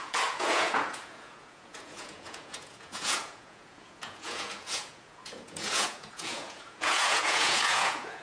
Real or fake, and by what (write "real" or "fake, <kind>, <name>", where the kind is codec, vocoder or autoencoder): fake, vocoder, Vocos